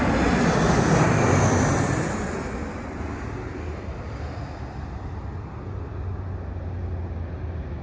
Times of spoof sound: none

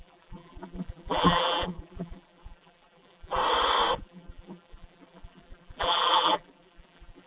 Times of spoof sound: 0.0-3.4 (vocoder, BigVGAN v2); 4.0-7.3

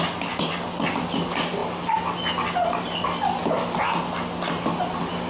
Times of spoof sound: none